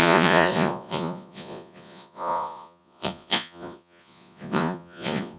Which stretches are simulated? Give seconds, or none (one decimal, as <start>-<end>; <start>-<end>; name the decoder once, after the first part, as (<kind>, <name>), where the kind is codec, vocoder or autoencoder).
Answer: 0.0-5.4 (vocoder, Vocos)